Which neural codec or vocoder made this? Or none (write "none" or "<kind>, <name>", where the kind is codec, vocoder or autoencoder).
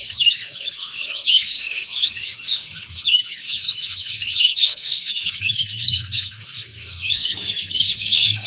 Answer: autoencoder, DAC-VAE